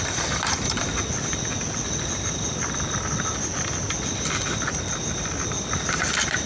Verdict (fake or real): real